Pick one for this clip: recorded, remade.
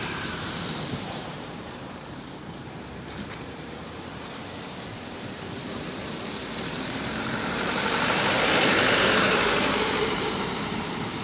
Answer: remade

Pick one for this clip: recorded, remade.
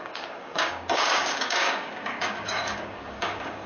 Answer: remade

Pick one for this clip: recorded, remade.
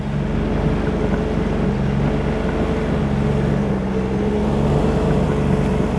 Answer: recorded